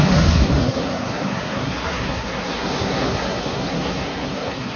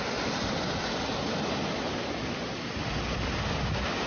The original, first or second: second